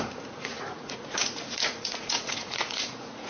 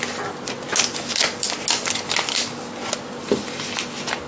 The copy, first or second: first